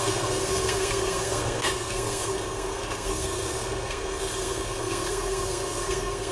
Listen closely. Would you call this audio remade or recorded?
remade